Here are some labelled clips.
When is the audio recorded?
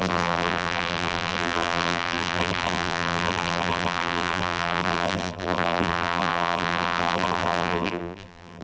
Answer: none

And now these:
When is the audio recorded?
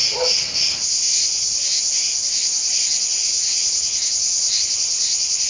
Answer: 3.2-4.6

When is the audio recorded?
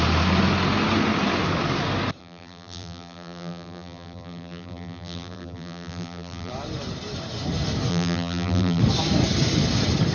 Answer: 0.0-2.2; 6.5-7.9; 8.8-10.1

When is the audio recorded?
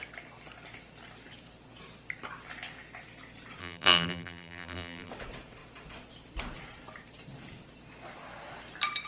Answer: 0.0-3.6; 5.1-9.1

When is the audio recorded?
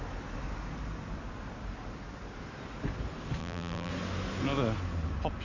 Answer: 0.0-3.4; 3.9-5.4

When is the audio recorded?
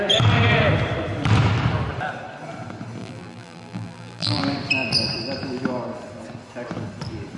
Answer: 0.0-3.0; 4.4-7.4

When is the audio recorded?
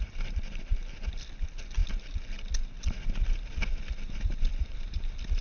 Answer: 0.0-4.3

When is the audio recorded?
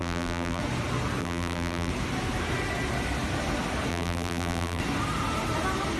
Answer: 0.6-1.2; 1.9-3.9; 4.8-6.0